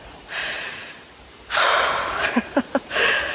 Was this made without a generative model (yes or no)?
no